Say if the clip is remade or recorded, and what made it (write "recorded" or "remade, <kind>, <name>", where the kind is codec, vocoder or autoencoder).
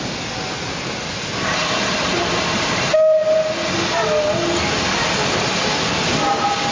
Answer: recorded